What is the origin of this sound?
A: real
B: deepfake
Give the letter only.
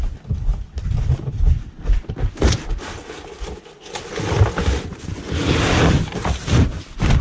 A